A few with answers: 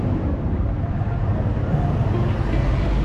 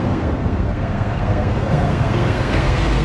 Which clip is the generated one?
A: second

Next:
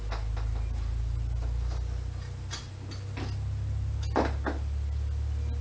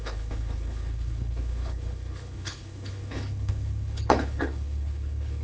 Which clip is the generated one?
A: second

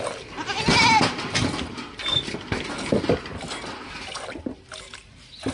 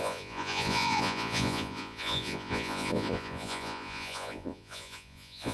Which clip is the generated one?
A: second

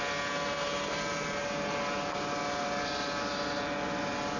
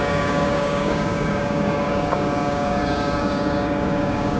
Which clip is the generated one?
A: second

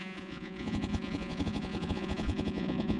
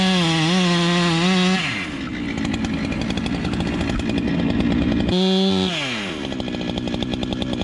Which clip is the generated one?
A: first